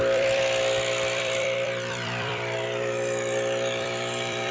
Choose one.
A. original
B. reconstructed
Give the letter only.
B